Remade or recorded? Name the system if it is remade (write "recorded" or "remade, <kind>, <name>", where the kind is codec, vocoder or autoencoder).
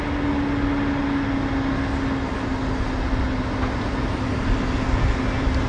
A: recorded